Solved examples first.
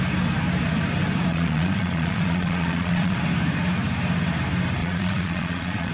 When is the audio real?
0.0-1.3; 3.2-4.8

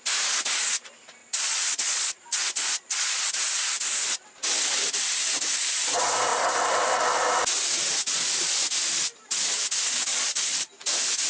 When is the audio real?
0.0-1.2; 3.3-10.1; 10.7-11.3

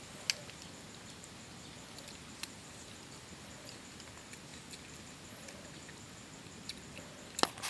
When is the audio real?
0.0-7.7

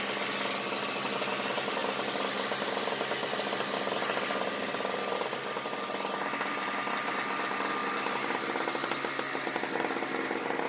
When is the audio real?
0.0-10.7